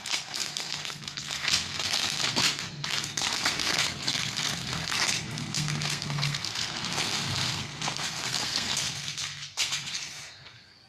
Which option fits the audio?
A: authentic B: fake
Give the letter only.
B